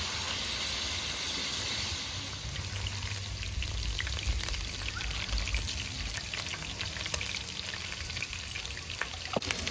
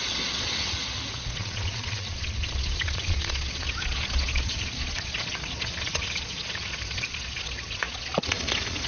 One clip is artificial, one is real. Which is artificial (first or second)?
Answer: second